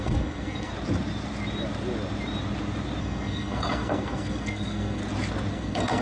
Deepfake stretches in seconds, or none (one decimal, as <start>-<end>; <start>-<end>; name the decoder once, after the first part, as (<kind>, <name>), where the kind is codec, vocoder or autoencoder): 0.0-0.7 (codec, SNAC); 3.0-5.0; 5.5-6.0